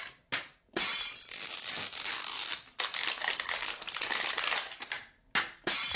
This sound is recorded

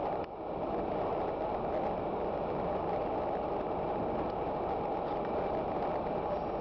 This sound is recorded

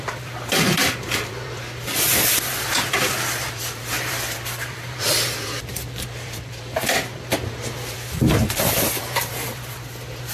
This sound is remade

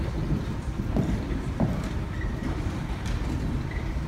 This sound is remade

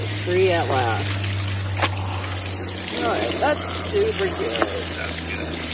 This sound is recorded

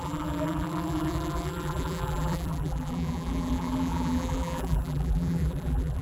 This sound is remade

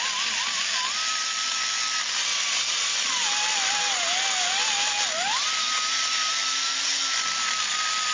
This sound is recorded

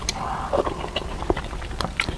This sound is remade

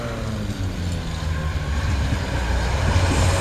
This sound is recorded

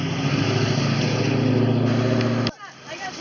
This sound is recorded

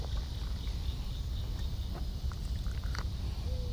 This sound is recorded